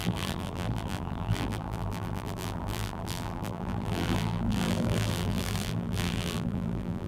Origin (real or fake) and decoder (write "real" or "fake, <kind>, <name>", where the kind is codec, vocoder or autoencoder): fake, vocoder, BigVGAN v2